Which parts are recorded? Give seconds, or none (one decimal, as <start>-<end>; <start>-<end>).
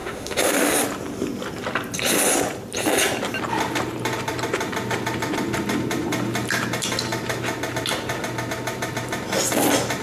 0.7-10.0